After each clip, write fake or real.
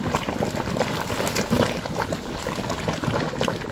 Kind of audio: real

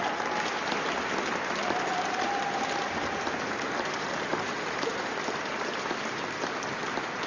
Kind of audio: real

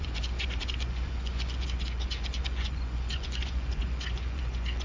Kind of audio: fake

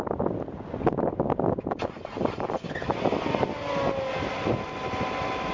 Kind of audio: real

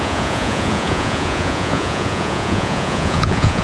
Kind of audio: fake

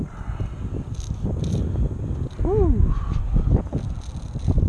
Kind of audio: real